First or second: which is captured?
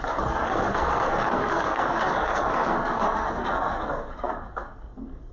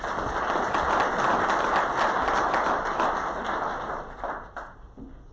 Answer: second